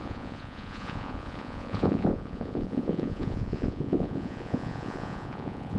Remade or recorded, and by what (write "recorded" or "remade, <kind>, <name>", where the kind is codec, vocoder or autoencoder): remade, vocoder, Vocos